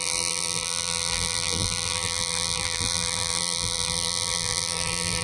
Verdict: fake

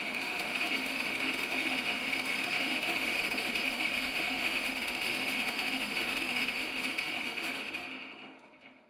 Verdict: fake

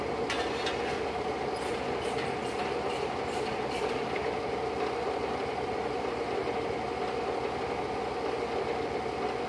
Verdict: real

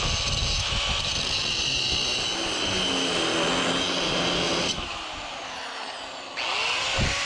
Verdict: real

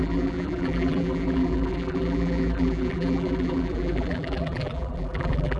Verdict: fake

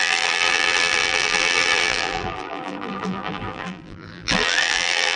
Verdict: fake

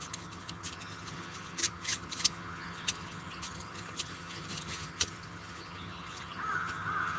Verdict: fake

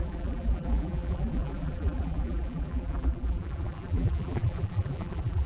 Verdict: fake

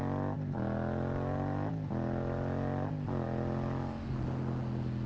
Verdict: real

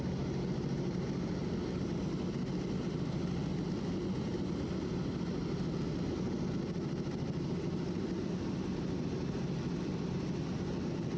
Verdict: real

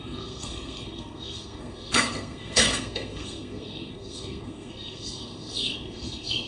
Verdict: fake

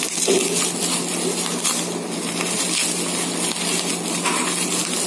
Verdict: real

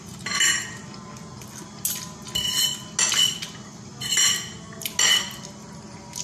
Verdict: real